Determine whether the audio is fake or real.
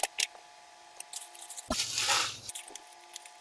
real